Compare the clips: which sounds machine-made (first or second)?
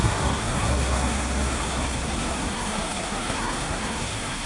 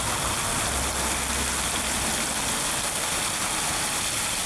first